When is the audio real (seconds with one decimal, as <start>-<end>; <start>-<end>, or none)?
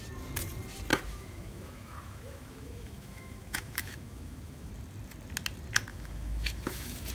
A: 0.0-0.9; 4.7-5.9